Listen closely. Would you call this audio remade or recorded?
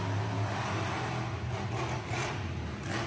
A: recorded